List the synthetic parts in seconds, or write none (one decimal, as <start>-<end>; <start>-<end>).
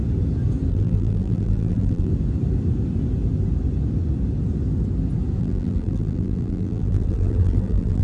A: 0.7-2.1; 5.4-8.0